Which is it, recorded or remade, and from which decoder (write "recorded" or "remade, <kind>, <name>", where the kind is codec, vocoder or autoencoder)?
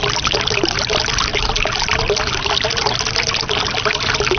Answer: recorded